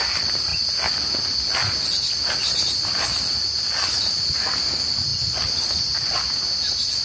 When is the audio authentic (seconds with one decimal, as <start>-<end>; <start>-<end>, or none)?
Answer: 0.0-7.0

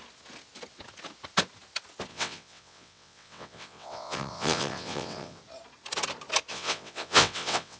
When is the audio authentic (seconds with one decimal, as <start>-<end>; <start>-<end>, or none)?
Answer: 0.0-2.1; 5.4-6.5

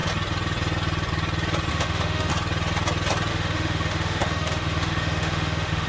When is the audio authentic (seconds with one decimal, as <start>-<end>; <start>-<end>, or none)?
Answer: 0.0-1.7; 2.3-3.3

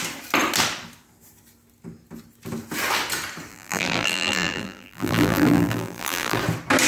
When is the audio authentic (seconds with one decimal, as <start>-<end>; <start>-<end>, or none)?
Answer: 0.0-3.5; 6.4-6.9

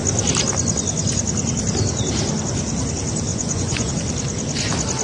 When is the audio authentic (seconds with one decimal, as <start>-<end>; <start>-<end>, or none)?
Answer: 0.0-3.3; 3.9-5.0

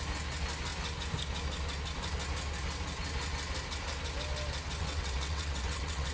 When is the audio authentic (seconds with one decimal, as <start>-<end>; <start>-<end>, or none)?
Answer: 0.0-4.8

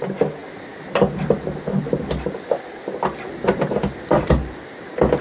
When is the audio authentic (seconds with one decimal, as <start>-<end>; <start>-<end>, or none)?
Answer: 0.0-5.2